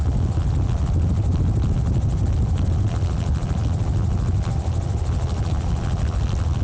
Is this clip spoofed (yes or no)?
no